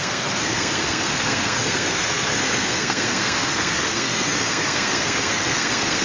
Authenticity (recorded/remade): remade